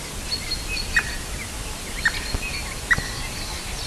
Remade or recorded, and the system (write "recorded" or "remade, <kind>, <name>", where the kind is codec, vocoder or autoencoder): recorded